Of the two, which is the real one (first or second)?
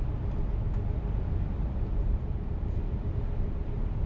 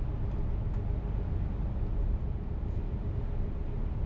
second